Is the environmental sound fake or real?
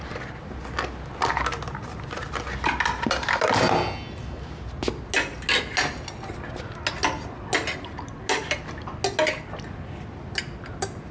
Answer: real